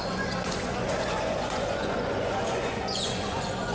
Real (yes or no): no